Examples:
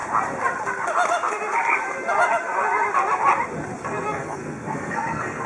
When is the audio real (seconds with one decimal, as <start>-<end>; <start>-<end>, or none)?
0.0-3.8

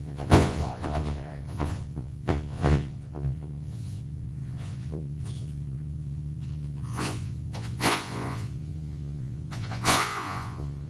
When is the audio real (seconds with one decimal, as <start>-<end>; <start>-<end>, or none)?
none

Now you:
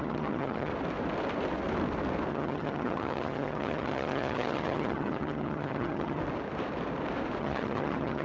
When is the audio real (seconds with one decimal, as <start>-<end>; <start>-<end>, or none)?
0.7-2.3; 6.2-7.4

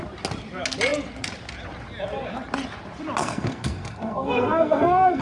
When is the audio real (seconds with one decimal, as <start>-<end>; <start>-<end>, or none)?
0.0-3.2

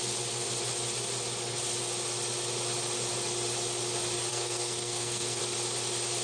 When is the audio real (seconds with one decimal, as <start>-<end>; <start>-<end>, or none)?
0.0-4.3; 5.4-6.2

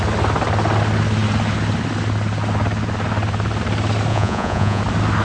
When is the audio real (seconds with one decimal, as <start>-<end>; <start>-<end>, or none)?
0.0-4.1; 4.8-5.2